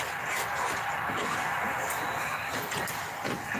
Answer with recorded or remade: recorded